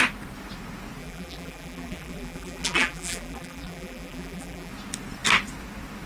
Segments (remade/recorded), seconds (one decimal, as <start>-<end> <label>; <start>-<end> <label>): 0.0-1.0 recorded; 1.0-4.7 remade; 4.7-6.1 recorded